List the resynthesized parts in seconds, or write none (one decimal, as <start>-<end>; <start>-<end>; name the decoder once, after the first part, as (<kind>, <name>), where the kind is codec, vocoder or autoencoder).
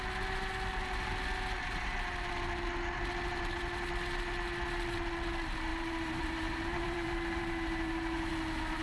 5.7-8.3 (vocoder, BigVGAN v2)